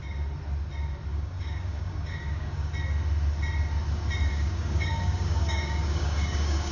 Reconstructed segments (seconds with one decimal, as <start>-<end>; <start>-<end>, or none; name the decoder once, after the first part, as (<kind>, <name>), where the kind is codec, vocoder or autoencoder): 1.1-2.7 (codec, DAC); 4.3-6.7